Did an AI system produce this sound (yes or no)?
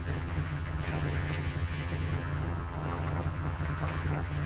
yes